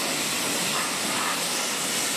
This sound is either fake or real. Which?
real